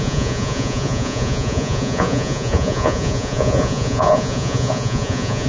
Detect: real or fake fake